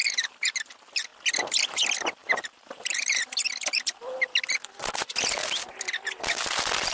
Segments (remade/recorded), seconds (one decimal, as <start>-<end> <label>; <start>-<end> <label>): 0.0-0.7 remade; 0.7-2.2 recorded; 2.2-3.2 remade; 3.2-6.9 recorded